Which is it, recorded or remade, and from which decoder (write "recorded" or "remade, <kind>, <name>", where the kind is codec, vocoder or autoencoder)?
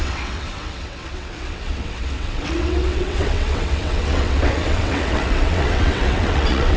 remade, vocoder, WaveNeXt